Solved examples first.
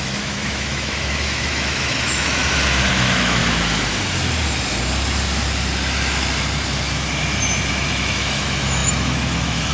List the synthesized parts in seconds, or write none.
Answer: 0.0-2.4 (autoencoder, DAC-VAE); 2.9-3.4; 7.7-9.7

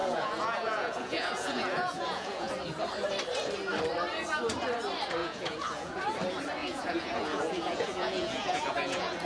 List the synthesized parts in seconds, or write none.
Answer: 0.0-2.5 (vocoder, Vocos); 5.2-5.9; 6.6-9.3

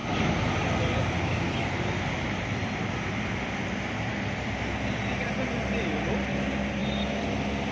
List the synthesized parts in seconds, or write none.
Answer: none